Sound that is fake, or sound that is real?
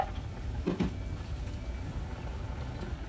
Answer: real